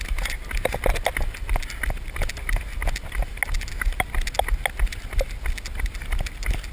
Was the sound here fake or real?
real